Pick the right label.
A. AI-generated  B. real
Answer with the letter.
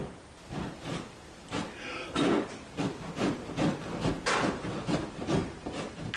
B